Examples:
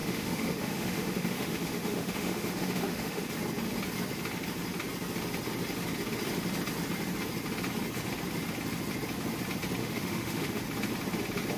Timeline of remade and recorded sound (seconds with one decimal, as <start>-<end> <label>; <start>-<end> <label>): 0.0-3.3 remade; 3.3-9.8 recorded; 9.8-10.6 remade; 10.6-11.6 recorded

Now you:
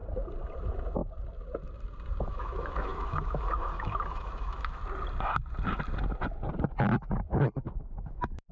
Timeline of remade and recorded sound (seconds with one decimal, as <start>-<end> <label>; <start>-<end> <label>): 0.0-2.2 recorded; 2.2-4.8 remade; 4.8-7.6 recorded; 7.6-8.5 remade

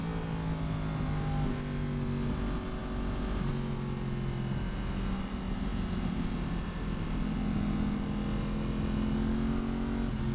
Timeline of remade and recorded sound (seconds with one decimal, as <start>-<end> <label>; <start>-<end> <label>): 0.0-10.3 recorded

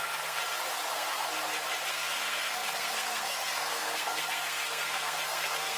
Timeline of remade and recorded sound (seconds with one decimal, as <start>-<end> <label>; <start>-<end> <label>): 0.0-0.4 remade; 0.4-0.9 recorded; 0.9-1.3 remade; 1.3-1.9 recorded; 1.9-5.8 remade

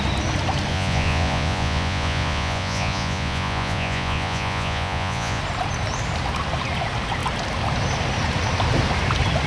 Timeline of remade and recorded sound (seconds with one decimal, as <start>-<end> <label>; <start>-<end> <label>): 0.0-0.7 recorded; 0.7-5.4 remade; 5.4-9.5 recorded

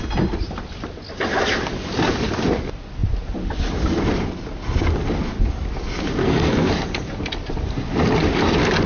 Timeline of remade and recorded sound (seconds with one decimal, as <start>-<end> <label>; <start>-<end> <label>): 0.0-6.2 recorded; 6.2-6.7 remade; 6.7-8.9 recorded